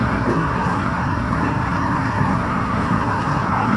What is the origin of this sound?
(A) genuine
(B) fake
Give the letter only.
B